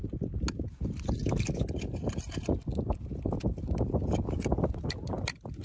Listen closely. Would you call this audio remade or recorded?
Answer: recorded